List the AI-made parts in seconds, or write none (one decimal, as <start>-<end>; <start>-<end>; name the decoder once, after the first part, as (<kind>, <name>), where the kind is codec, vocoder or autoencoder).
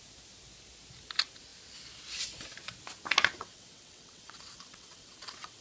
3.3-5.6 (vocoder, WaveNeXt)